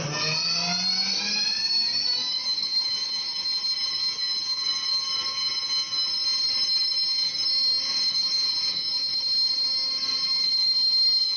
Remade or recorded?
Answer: recorded